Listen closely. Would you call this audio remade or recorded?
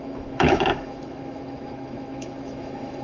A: remade